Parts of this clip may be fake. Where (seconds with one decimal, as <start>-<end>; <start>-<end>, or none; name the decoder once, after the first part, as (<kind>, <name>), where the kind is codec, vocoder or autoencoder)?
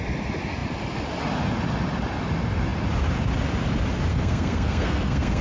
4.1-5.4 (codec, SNAC)